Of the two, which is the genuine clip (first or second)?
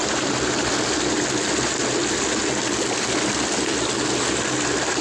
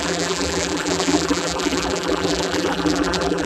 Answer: first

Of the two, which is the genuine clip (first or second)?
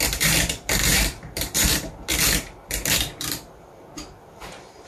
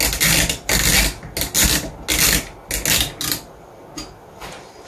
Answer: second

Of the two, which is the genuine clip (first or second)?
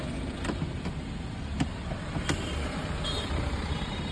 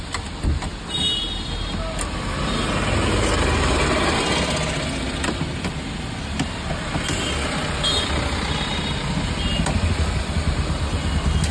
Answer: second